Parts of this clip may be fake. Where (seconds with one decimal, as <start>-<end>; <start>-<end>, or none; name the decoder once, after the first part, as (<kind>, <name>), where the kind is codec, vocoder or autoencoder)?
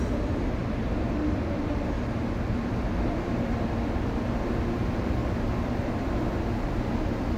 none